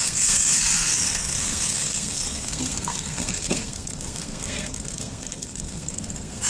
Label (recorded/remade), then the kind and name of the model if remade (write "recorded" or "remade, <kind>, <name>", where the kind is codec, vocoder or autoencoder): remade, codec, SNAC